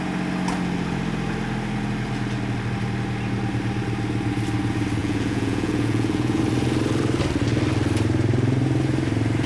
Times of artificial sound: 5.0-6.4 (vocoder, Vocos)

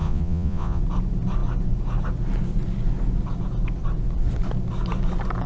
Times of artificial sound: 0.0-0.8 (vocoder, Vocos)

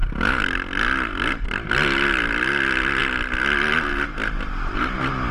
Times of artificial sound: none

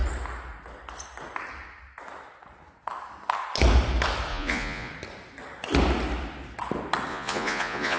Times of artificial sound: 4.3-4.9 (vocoder, Vocos); 7.1-8.0

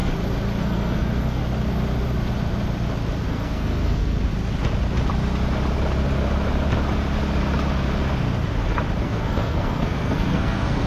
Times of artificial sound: 0.6-1.4 (codec, SNAC); 3.3-4.3; 9.0-10.9

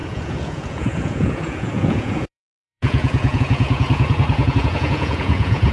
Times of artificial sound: 0.0-5.7 (vocoder, Vocos)